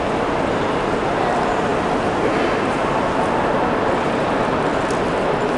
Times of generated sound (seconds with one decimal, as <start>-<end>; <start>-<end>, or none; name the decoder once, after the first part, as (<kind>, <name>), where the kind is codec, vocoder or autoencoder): none